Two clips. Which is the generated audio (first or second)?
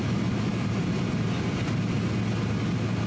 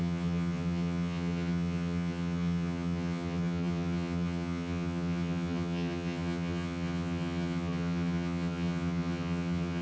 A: second